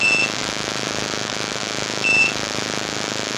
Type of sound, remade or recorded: remade